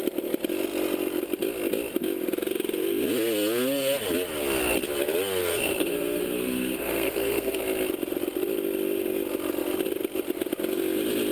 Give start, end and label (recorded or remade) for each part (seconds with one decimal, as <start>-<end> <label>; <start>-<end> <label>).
0.0-5.4 recorded; 5.4-7.6 remade; 7.6-11.3 recorded